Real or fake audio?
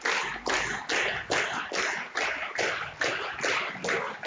real